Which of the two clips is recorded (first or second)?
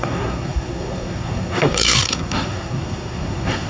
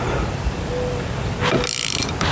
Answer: second